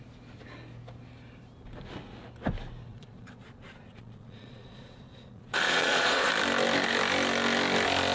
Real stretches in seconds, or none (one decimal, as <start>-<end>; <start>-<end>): 0.0-2.9; 6.3-8.1